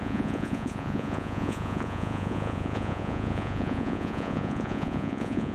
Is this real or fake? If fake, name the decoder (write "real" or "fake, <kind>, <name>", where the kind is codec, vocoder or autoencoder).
fake, vocoder, Vocos